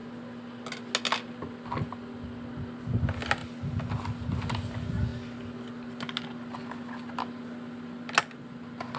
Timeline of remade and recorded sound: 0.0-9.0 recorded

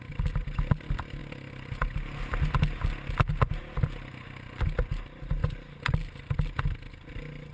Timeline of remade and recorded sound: 0.0-7.5 recorded

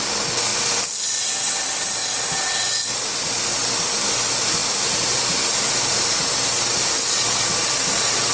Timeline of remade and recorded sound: 0.0-4.6 recorded; 4.6-6.1 remade; 6.1-8.3 recorded

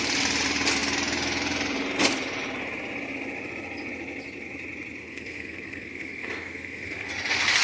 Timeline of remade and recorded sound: 0.0-5.0 recorded; 5.0-7.1 remade; 7.1-7.6 recorded